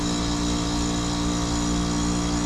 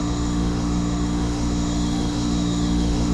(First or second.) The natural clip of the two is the first